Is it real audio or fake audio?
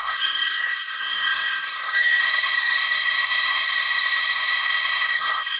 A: fake